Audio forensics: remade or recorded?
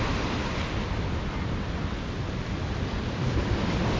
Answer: recorded